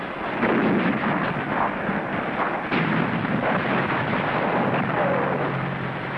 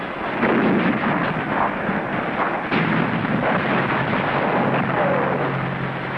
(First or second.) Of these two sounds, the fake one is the first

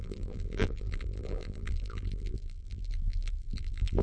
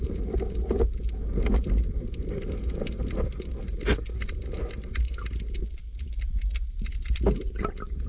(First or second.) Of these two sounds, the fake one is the first